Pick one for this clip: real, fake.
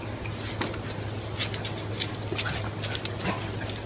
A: real